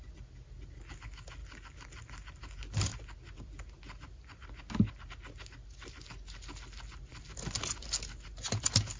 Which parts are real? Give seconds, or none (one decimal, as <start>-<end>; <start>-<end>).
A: 0.0-9.0